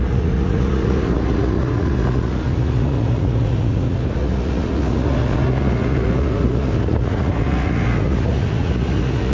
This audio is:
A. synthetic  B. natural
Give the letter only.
A